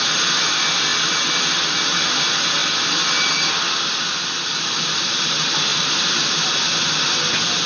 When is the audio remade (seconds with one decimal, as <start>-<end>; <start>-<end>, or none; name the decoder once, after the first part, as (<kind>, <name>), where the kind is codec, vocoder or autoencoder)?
5.7-6.6 (vocoder, BigVGAN v2)